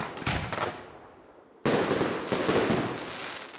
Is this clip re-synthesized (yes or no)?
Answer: no